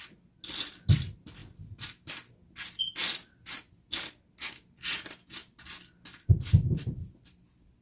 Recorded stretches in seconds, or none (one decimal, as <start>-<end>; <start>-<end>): 0.0-7.8